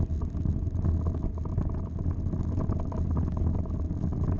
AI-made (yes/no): no